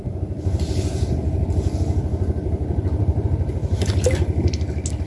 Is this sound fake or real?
real